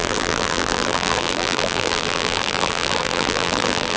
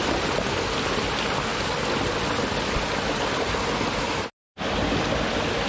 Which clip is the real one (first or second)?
second